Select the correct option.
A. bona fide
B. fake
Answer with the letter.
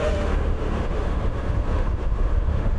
B